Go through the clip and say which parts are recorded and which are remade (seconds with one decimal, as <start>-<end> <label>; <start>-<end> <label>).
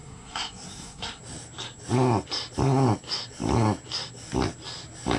0.0-1.2 remade; 1.2-5.2 recorded